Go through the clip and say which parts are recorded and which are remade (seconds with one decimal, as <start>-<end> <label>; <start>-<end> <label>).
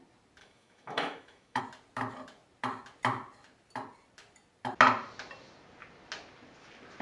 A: 0.0-0.4 recorded; 0.4-1.6 remade; 1.6-7.0 recorded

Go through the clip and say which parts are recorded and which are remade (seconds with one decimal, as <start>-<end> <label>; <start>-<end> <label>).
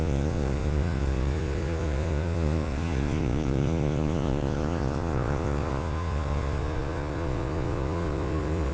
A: 0.0-8.7 remade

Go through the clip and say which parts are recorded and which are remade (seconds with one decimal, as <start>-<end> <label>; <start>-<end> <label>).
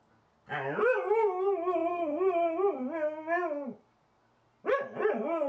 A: 0.0-5.5 recorded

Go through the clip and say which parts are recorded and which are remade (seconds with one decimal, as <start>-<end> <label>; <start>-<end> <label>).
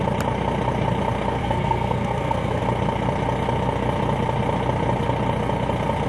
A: 0.0-1.4 recorded; 1.4-2.6 remade; 2.6-6.1 recorded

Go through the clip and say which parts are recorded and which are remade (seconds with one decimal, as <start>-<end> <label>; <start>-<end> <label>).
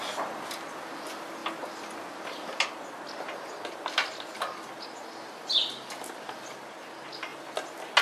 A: 0.0-8.0 recorded